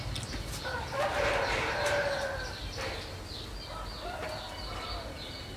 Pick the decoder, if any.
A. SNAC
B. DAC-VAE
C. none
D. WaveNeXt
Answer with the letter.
C